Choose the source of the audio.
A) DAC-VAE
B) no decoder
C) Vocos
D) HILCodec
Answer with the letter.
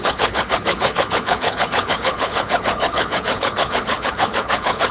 D